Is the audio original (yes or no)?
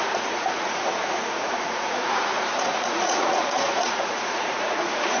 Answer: no